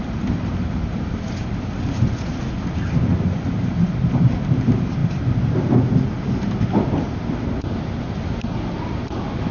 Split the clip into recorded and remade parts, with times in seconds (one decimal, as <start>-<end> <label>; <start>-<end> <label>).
0.0-9.5 recorded